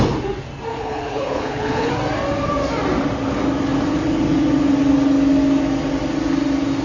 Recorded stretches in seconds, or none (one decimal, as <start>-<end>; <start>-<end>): 0.0-0.7; 1.9-6.8